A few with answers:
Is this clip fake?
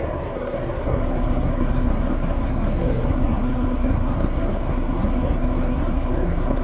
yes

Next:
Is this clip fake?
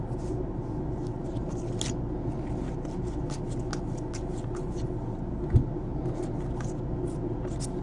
no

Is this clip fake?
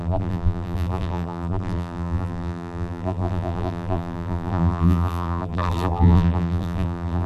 yes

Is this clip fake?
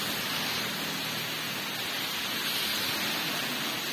no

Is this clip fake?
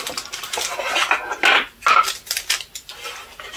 no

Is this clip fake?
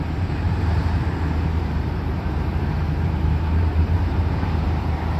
yes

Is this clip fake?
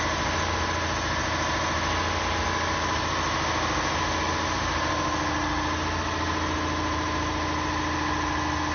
no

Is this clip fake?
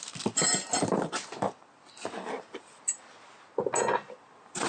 no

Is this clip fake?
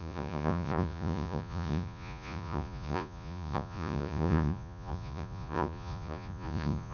yes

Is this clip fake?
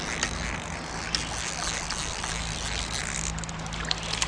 no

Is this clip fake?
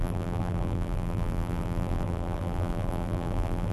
yes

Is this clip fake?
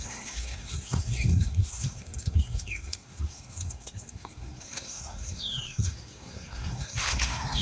yes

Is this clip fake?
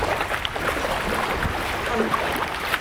no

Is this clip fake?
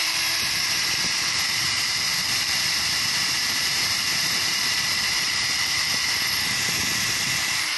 yes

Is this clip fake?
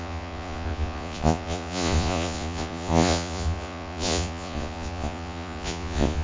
yes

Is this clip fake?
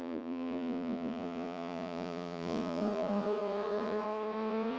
yes